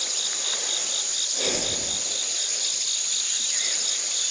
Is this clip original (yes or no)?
yes